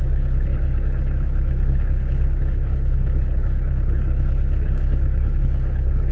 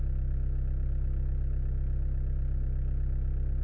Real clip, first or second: second